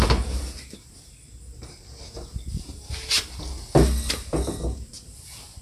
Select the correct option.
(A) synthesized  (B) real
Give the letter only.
B